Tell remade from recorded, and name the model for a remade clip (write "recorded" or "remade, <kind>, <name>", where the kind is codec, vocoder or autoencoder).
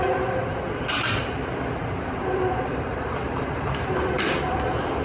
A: remade, vocoder, BigVGAN v2